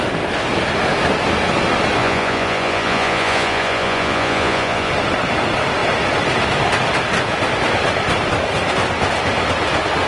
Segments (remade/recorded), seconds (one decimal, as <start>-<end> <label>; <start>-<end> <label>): 0.0-2.0 recorded; 2.0-4.9 remade; 4.9-10.1 recorded

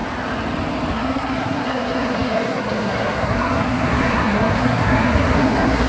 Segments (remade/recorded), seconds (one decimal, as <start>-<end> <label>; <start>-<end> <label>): 0.0-0.9 recorded; 0.9-5.9 remade

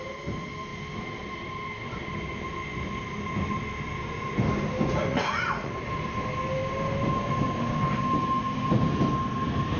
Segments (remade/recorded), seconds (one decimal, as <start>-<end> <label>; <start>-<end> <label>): 0.0-5.1 recorded; 5.1-5.7 remade; 5.7-9.8 recorded

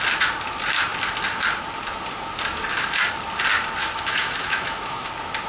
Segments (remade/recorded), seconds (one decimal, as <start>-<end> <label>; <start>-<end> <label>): 0.0-3.8 recorded; 3.8-5.1 remade; 5.1-5.5 recorded

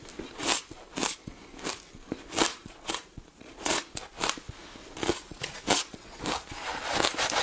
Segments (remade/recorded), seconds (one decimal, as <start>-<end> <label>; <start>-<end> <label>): 0.0-2.5 recorded; 2.5-3.8 remade; 3.8-4.8 recorded; 4.8-6.2 remade; 6.2-7.4 recorded

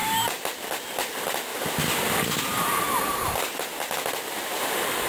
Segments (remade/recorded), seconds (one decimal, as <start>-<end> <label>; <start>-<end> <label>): 0.0-1.0 remade; 1.0-1.5 recorded; 1.5-4.6 remade; 4.6-5.1 recorded